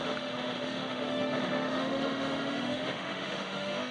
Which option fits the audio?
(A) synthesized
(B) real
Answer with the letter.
A